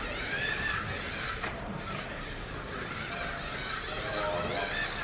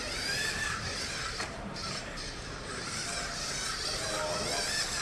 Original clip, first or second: first